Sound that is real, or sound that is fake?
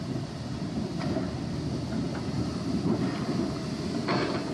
real